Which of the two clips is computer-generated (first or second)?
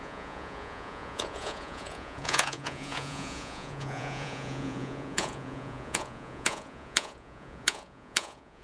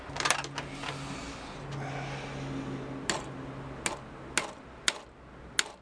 first